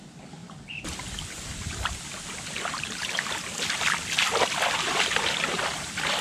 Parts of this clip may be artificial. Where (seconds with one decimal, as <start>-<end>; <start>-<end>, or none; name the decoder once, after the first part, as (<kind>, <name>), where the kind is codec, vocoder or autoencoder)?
none